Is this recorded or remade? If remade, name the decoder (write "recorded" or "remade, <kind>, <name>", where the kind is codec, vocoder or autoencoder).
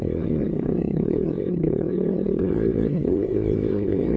remade, codec, SNAC